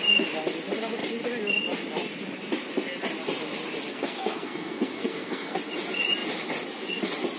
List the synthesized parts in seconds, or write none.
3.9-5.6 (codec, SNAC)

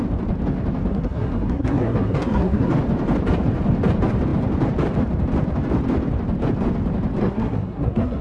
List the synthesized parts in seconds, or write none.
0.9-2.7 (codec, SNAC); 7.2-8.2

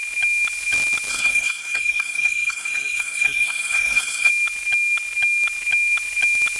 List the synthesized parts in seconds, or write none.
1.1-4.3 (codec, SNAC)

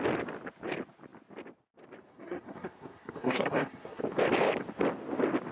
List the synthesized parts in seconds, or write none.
2.1-4.0 (codec, SNAC)

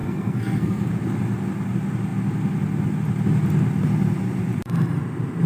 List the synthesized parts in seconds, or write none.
0.0-0.9 (codec, SNAC)